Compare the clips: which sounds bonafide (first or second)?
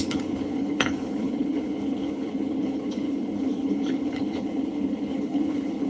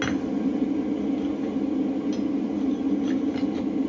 second